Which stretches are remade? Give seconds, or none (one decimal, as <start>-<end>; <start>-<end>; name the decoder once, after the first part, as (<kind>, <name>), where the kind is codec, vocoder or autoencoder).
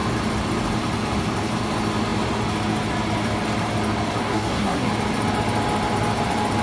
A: 4.2-4.9 (codec, SNAC)